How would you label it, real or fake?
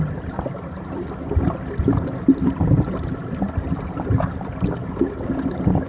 real